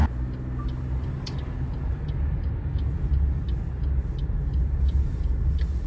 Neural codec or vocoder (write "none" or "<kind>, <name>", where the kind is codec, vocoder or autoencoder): none